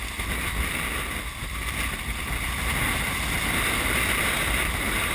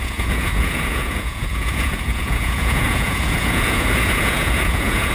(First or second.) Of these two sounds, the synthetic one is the second